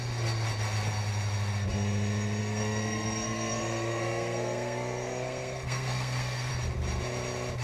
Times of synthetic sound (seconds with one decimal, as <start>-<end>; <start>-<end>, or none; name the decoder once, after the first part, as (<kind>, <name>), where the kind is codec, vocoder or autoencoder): 2.4-6.5 (codec, SNAC)